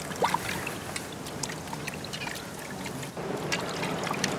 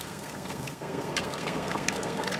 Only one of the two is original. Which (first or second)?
first